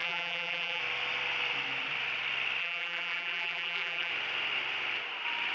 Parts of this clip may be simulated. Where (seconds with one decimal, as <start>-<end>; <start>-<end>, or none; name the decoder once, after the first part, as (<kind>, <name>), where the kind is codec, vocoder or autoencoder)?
0.0-0.8 (vocoder, BigVGAN v2); 2.6-4.1